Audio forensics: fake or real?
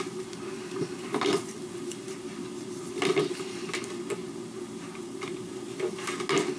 real